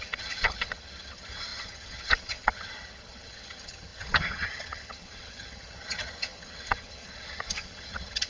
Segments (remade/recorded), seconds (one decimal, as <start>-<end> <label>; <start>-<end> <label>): 0.0-8.3 remade